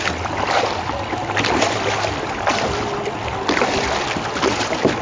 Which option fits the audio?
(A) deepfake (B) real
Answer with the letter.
B